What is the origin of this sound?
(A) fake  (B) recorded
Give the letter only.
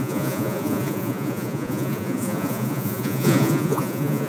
A